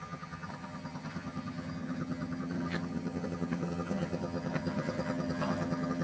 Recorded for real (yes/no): no